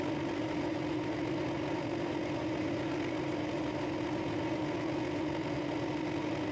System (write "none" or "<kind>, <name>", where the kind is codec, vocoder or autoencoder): none